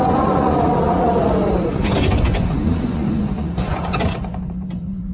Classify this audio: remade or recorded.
remade